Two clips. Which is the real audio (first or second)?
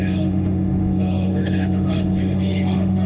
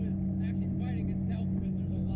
second